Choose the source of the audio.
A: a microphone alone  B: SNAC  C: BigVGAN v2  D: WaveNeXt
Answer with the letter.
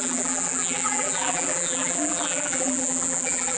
C